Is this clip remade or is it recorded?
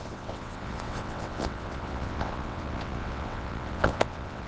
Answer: remade